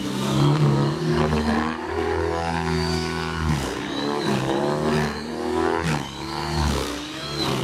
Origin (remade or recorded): remade